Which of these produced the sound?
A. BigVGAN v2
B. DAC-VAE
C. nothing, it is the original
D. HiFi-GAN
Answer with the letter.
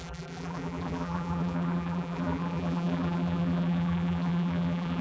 A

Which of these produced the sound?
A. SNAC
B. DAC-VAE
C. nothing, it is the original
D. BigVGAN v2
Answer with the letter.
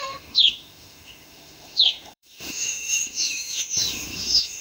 B